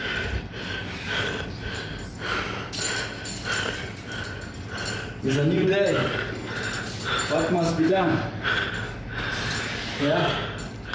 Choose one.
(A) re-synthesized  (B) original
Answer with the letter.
B